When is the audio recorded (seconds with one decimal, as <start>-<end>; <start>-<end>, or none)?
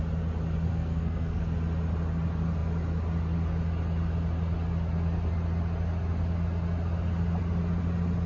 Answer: 0.0-0.7; 1.4-8.3